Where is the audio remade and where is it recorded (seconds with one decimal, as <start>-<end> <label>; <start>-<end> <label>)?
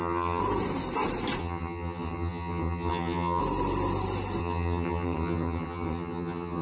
0.0-0.4 remade; 0.4-1.4 recorded; 1.4-3.4 remade; 3.4-4.4 recorded; 4.4-6.6 remade